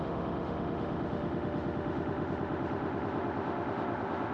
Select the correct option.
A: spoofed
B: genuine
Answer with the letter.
A